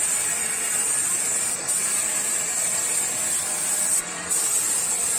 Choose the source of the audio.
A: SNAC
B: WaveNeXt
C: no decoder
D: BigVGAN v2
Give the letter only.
C